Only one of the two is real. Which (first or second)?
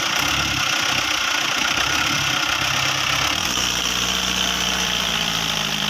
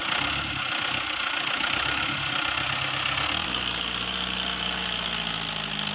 second